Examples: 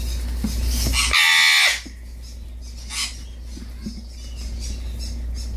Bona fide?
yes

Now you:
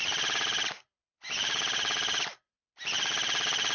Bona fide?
yes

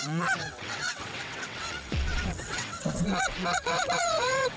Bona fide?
no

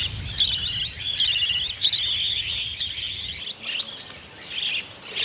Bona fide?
yes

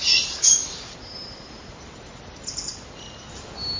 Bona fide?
yes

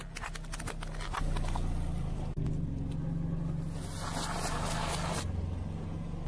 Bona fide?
yes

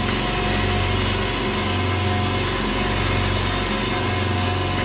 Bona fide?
yes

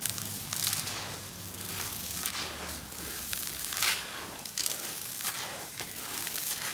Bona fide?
no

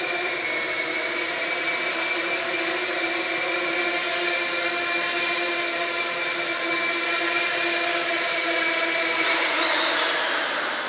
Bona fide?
yes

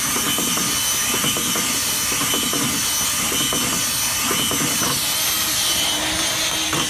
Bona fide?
yes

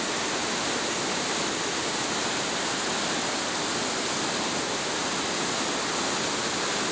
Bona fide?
yes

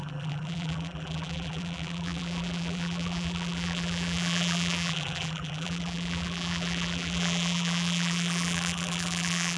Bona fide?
no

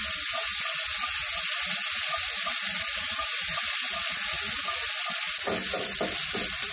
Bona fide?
yes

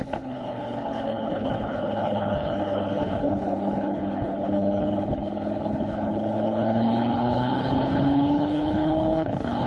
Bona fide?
no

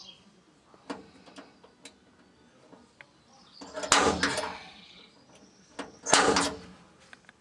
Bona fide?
yes